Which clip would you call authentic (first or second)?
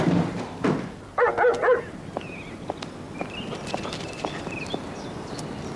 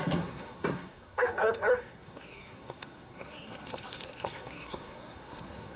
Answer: first